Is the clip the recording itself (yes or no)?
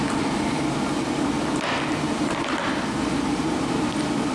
no